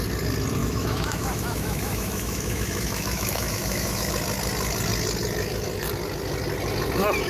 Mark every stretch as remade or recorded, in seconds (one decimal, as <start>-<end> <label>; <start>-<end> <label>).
0.0-0.6 recorded; 0.6-4.1 remade; 4.1-7.3 recorded